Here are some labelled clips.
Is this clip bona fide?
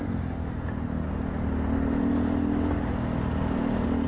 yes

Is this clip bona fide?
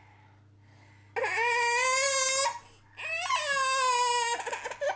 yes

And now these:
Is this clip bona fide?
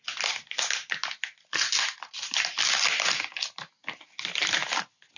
yes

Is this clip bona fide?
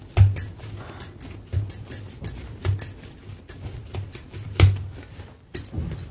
yes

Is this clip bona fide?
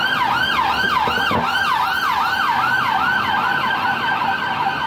yes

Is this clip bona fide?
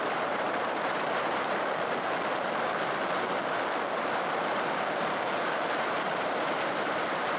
no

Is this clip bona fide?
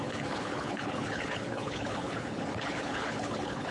no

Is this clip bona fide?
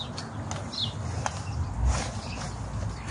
yes